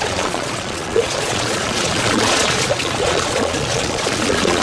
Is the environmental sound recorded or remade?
remade